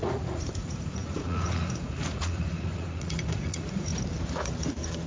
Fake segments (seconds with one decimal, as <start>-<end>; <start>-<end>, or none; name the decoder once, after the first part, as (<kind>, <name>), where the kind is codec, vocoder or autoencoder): 0.0-3.9 (vocoder, Vocos)